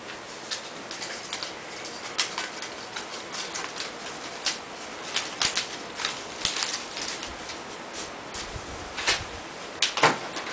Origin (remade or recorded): recorded